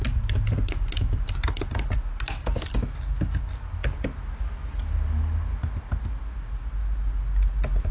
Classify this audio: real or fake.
real